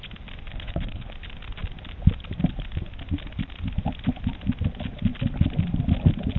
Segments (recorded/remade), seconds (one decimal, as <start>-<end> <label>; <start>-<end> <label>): 0.0-0.5 recorded; 0.5-1.1 remade; 1.1-6.4 recorded